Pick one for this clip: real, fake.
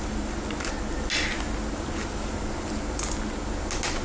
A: real